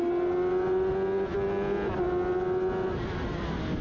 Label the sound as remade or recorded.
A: recorded